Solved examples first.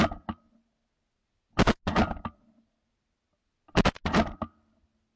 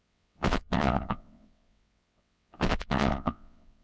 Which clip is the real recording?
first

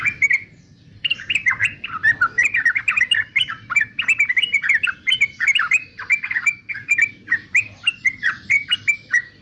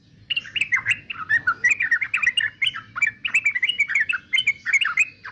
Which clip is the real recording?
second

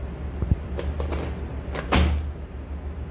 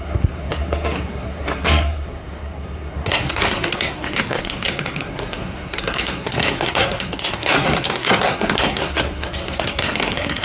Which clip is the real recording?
first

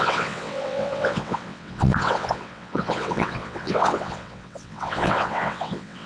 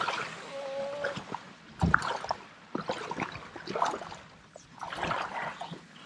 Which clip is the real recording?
second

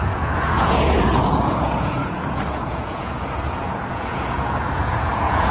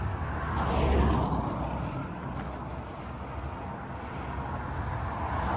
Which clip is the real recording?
second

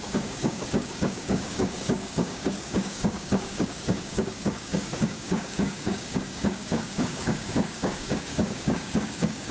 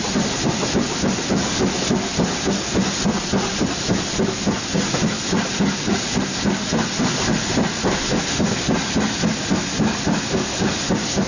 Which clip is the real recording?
second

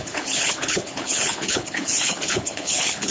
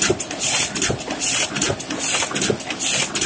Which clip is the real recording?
second